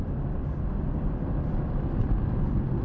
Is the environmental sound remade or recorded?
remade